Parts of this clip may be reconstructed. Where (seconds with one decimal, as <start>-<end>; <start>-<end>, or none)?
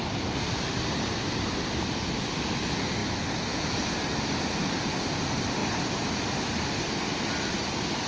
0.0-3.0; 4.9-5.6